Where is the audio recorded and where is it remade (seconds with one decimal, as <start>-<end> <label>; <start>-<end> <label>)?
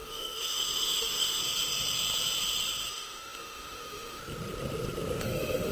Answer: 0.0-1.4 remade; 1.4-2.9 recorded; 2.9-4.2 remade; 4.2-5.2 recorded; 5.2-5.7 remade